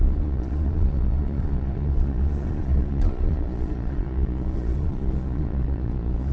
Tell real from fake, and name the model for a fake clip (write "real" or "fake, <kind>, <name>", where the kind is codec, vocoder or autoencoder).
fake, vocoder, Vocos